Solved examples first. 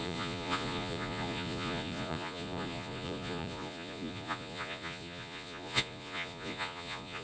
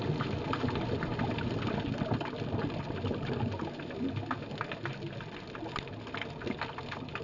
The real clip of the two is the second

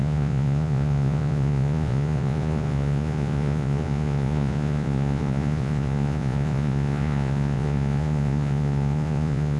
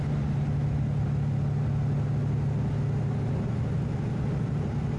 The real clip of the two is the second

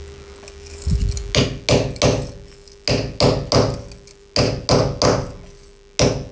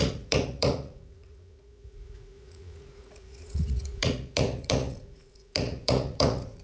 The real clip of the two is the first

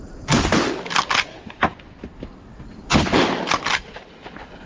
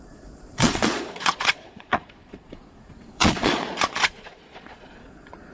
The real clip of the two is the first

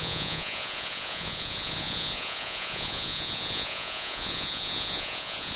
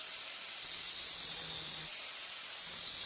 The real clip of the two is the second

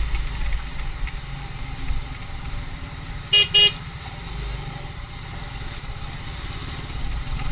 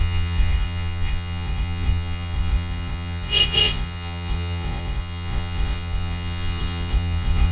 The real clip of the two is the first